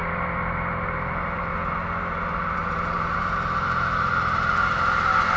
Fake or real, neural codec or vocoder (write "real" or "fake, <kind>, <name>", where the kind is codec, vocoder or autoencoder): fake, vocoder, BigVGAN v2